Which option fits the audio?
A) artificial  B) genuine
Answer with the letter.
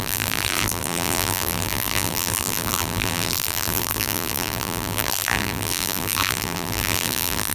A